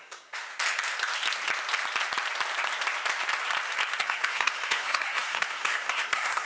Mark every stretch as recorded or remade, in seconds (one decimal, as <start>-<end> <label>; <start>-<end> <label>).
0.0-0.5 remade; 0.5-4.0 recorded; 4.0-6.5 remade